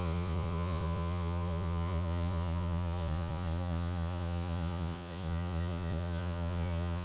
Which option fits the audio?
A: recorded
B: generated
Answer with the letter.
B